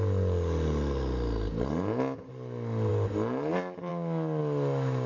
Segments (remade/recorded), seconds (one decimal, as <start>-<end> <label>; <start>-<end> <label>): 0.0-5.1 recorded